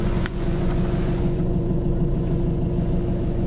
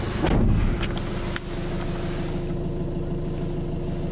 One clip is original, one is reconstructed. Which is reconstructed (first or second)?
first